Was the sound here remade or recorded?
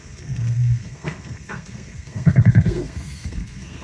remade